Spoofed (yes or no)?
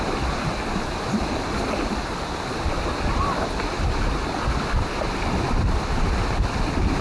no